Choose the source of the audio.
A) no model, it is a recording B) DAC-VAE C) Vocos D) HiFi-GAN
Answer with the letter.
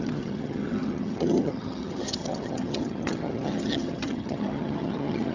D